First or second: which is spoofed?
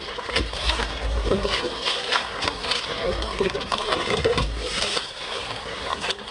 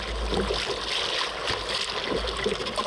first